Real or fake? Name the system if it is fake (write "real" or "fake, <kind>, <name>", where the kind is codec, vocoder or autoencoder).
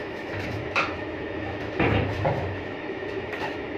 fake, autoencoder, DAC-VAE